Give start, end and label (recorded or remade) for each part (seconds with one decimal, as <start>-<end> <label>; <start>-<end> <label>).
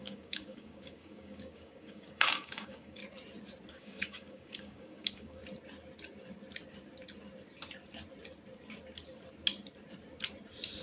0.0-3.0 remade; 3.0-3.7 recorded; 3.7-5.4 remade; 5.4-10.8 recorded